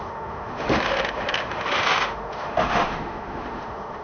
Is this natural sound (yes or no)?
no